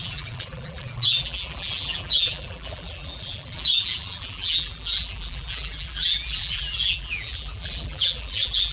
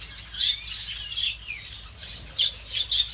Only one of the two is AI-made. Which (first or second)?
first